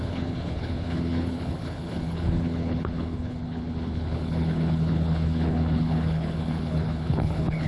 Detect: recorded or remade remade